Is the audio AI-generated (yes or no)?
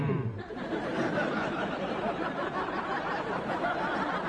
yes